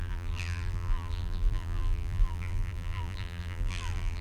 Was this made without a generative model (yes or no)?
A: no